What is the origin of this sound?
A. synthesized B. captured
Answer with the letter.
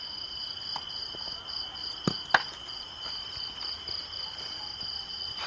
B